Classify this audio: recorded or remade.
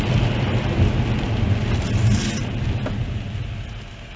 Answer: recorded